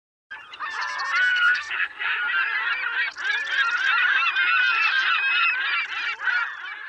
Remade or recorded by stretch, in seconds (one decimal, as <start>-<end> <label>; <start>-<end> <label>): 0.0-1.3 recorded; 1.3-2.2 remade; 2.2-6.9 recorded